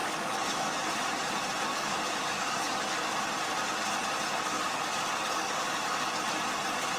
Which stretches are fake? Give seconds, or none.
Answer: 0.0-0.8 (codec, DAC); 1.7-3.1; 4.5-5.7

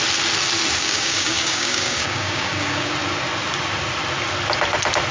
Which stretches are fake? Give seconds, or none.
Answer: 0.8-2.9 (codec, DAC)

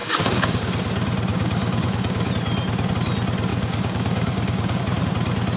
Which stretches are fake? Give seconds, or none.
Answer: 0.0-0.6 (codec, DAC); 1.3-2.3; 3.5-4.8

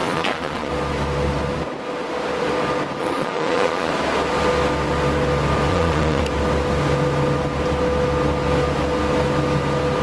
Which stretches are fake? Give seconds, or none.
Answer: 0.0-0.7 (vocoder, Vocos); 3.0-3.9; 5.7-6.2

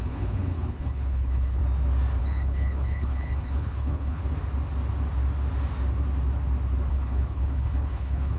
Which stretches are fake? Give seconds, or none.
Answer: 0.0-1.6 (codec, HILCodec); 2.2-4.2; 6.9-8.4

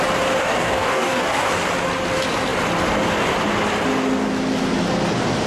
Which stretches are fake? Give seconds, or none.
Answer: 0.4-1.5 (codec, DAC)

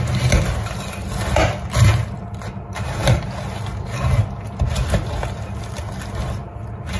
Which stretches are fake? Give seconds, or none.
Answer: none

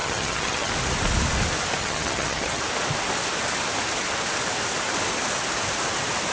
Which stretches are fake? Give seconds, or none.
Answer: 0.0-0.7 (vocoder, HiFi-GAN); 1.8-2.6